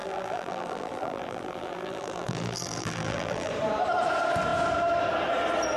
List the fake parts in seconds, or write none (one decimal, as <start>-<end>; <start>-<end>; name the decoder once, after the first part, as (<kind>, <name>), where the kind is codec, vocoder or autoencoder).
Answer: 0.0-3.5 (vocoder, BigVGAN v2)